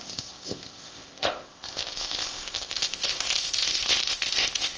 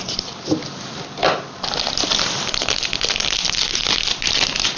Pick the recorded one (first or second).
second